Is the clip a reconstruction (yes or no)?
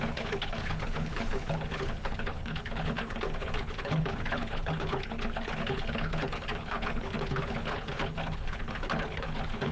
yes